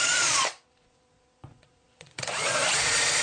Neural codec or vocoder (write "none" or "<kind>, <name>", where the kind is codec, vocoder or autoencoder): vocoder, Vocos